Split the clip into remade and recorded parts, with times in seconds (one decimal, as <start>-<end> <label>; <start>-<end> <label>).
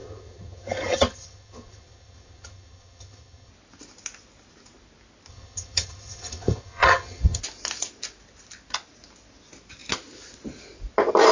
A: 0.0-3.5 remade; 3.5-5.3 recorded; 5.3-7.4 remade; 7.4-11.3 recorded